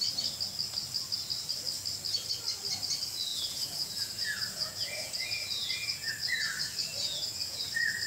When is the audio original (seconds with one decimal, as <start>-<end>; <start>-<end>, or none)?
0.0-3.3; 6.1-7.0; 7.6-8.1